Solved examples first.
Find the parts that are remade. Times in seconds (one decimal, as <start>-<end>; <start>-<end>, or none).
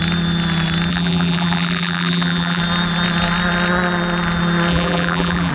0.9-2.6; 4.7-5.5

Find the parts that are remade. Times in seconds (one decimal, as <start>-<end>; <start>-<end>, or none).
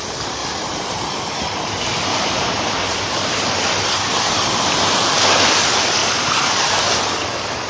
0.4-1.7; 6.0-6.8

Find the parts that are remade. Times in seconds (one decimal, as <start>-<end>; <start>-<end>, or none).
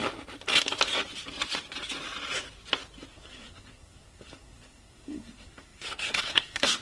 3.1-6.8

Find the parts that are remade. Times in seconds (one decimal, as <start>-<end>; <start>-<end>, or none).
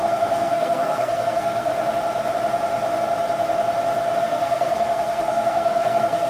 0.0-1.7; 4.2-6.3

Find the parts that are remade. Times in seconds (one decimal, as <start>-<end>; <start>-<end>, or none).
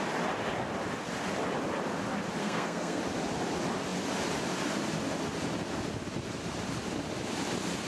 2.4-3.0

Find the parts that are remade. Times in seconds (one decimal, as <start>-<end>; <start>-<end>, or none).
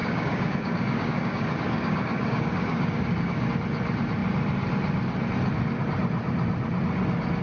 0.0-3.5